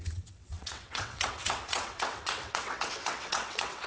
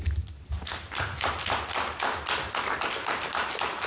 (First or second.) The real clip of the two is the second